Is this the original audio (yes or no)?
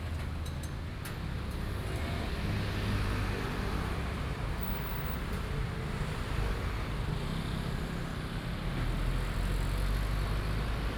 yes